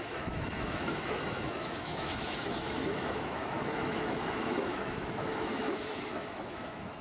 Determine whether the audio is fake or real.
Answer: fake